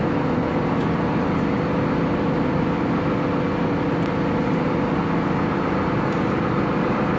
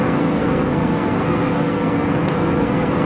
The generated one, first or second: second